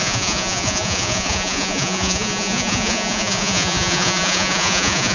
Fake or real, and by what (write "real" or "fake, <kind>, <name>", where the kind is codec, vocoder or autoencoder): fake, vocoder, Vocos